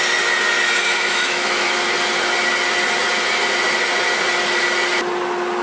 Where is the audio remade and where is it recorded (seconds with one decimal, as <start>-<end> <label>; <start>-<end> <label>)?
0.0-0.8 recorded; 0.8-1.8 remade; 1.8-5.6 recorded